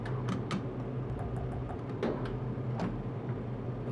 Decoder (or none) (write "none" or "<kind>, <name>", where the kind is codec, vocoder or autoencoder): none